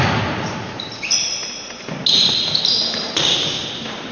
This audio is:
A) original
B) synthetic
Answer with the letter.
A